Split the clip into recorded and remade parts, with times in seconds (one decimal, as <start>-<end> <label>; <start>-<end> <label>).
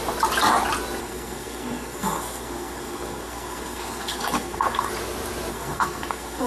0.0-1.0 recorded; 1.0-4.9 remade; 4.9-5.5 recorded; 5.5-6.5 remade